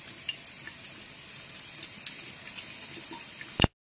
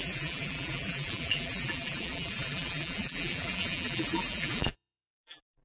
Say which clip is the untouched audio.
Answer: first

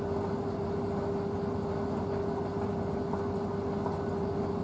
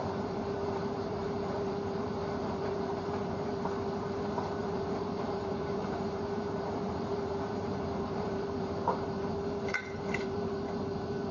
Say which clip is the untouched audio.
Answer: first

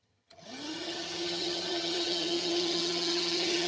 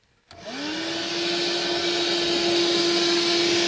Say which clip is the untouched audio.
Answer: second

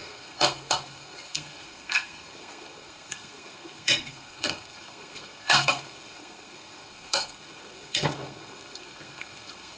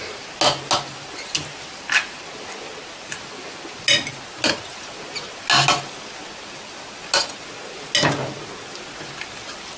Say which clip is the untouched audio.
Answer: second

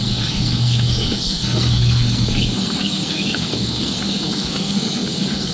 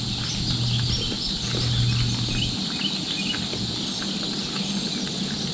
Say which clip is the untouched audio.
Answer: second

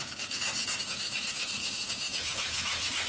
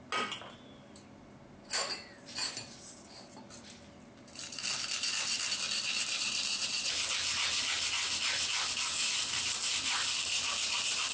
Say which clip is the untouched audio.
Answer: second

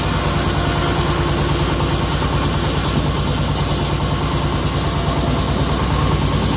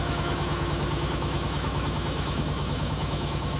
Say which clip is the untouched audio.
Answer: first